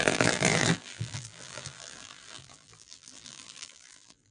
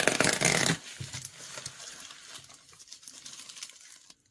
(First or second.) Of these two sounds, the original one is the second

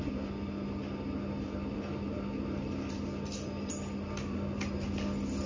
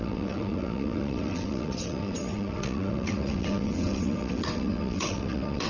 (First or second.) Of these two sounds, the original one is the first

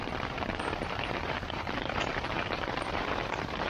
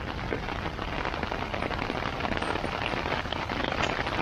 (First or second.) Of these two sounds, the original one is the second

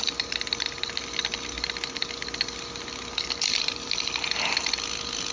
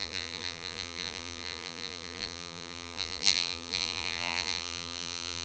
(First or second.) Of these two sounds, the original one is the first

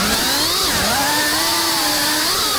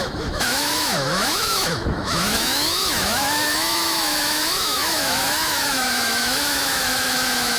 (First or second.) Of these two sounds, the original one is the first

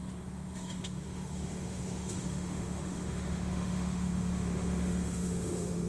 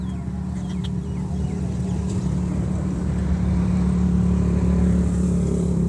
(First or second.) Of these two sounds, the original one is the second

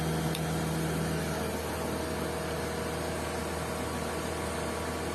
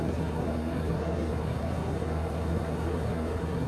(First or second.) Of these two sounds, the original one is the first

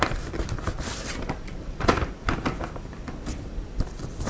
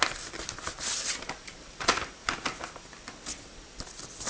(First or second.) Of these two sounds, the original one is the second